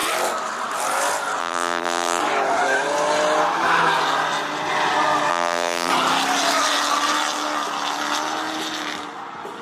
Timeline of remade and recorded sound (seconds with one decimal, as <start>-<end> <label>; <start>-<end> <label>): 0.0-1.4 recorded; 1.4-2.2 remade; 2.2-5.3 recorded; 5.3-5.9 remade; 5.9-9.6 recorded